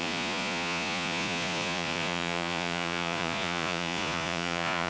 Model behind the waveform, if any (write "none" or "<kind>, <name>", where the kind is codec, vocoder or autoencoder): vocoder, Vocos